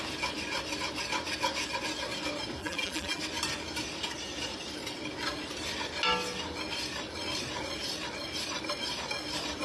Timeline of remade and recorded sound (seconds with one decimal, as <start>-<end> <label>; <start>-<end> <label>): 0.0-2.6 recorded; 2.6-3.2 remade; 3.2-9.6 recorded